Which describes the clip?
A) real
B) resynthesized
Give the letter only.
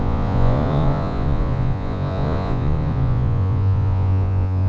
B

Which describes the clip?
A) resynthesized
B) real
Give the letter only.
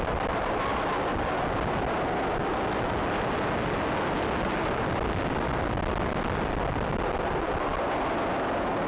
B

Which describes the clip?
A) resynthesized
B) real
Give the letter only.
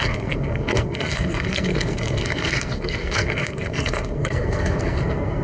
A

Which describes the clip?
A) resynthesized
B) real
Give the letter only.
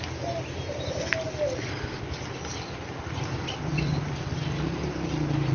B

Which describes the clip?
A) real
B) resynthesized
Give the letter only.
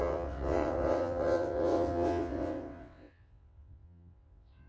B